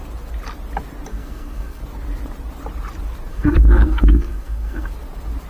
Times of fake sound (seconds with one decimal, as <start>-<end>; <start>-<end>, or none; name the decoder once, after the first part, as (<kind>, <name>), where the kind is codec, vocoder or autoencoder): 1.1-1.8 (codec, SNAC); 3.3-4.9